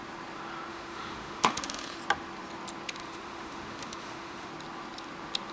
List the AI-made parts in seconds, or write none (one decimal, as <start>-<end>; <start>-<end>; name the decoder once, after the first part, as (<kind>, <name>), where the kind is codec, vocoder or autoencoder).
0.7-2.0 (autoencoder, DAC-VAE); 3.0-4.5